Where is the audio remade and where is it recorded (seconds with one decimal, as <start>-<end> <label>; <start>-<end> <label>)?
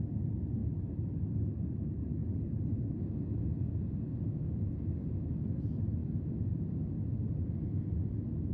0.0-2.2 recorded; 2.2-5.3 remade; 5.3-6.0 recorded; 6.0-7.2 remade; 7.2-8.5 recorded